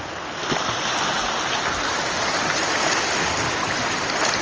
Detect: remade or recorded recorded